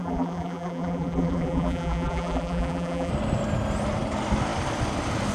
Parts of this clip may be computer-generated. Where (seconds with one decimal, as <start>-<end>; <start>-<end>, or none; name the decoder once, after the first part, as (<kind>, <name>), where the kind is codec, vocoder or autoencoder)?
0.0-3.1 (vocoder, BigVGAN v2)